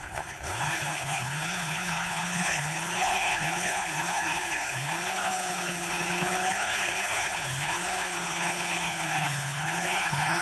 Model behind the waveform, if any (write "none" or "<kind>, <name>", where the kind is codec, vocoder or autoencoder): codec, HILCodec